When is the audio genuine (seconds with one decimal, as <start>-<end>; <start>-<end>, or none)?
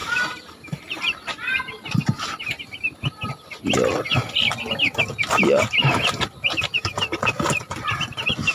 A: 3.3-8.5